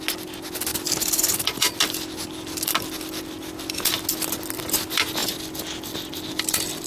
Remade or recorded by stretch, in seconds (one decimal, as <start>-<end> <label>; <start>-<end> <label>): 0.0-0.7 recorded; 0.7-4.0 remade; 4.0-5.2 recorded; 5.2-6.9 remade